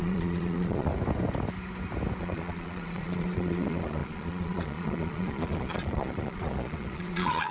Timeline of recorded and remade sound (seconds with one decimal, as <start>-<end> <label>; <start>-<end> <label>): 0.0-0.9 remade; 0.9-2.2 recorded; 2.2-7.5 remade